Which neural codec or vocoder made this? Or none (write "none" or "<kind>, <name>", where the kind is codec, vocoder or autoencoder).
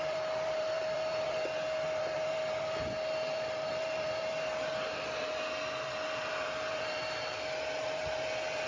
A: vocoder, BigVGAN v2